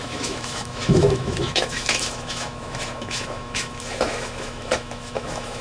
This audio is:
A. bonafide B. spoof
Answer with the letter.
B